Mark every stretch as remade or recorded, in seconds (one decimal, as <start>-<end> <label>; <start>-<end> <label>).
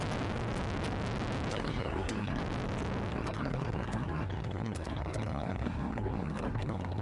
0.0-1.5 recorded; 1.5-2.4 remade; 2.4-3.1 recorded; 3.1-7.0 remade